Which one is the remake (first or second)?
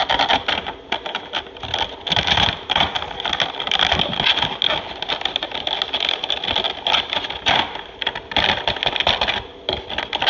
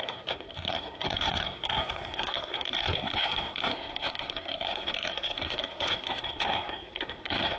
second